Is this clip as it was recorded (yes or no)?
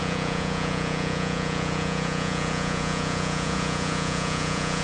no